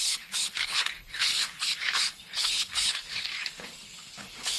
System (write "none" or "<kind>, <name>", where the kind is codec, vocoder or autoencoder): codec, HILCodec